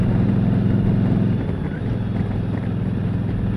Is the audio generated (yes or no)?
no